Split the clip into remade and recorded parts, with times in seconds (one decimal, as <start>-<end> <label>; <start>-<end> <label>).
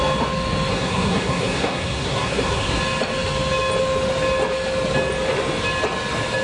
0.0-0.7 recorded; 0.7-2.8 remade; 2.8-6.4 recorded